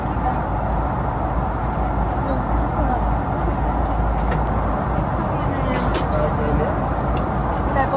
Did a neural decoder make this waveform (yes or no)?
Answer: no